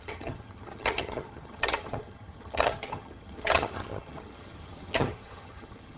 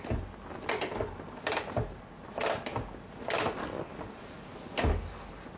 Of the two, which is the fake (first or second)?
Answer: first